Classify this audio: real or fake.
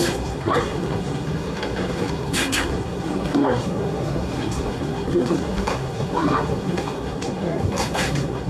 fake